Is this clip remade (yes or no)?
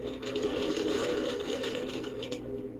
yes